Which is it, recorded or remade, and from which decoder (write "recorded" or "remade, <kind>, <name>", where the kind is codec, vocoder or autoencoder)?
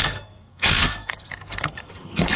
remade, codec, SNAC